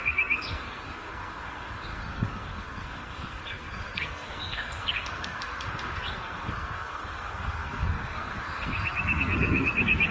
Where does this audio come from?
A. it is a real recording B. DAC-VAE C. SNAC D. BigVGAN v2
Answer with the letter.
C